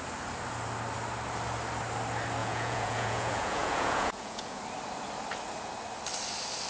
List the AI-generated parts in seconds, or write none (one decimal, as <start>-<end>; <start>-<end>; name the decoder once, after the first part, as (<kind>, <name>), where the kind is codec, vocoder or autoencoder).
2.4-4.6 (vocoder, Vocos)